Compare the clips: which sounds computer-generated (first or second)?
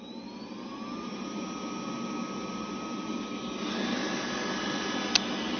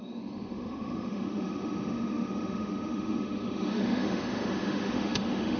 second